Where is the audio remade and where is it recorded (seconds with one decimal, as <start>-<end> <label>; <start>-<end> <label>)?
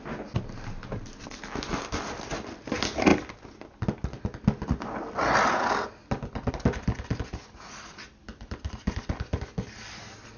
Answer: 0.0-10.4 recorded